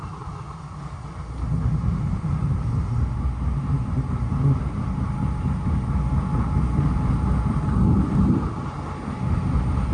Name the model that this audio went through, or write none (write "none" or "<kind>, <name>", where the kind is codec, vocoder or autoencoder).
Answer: none